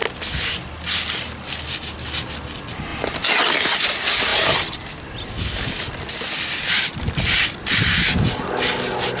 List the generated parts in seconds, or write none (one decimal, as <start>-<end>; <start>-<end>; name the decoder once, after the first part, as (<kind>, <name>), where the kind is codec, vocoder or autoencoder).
none